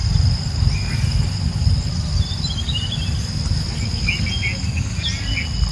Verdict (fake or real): real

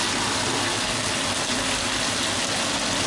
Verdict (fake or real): real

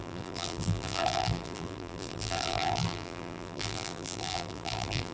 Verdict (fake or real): fake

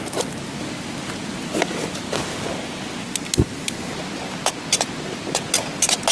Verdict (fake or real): real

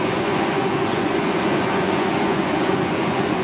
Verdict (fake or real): fake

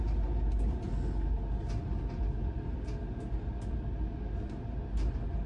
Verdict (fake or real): real